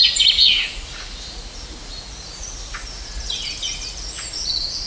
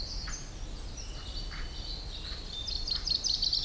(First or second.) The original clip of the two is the second